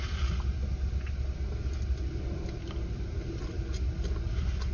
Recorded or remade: recorded